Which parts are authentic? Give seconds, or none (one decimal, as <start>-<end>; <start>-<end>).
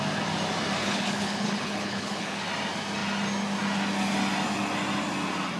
0.0-0.8; 2.4-5.6